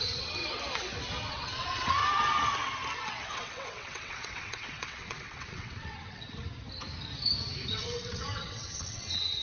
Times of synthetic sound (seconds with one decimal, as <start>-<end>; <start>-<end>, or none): 0.0-0.4; 1.3-2.0; 3.0-6.4; 7.7-9.4

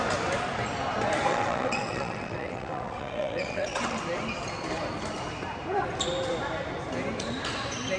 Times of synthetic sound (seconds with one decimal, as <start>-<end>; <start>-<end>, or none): 1.3-4.0

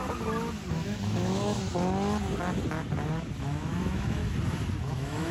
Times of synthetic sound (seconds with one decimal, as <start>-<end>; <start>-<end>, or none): 0.7-1.6; 3.4-4.2; 4.8-5.3

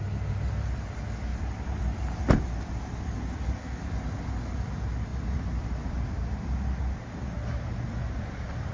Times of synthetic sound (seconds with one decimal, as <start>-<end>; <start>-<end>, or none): 1.3-2.9; 5.1-5.9